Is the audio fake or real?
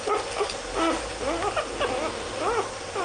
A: real